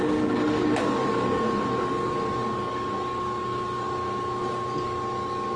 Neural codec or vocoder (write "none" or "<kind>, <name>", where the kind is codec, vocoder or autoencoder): codec, DAC